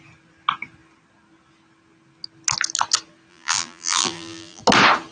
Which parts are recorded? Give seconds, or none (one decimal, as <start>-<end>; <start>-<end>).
0.0-3.3; 4.6-5.1